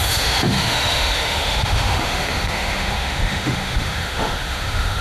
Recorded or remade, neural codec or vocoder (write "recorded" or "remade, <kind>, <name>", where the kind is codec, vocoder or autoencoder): remade, autoencoder, DAC-VAE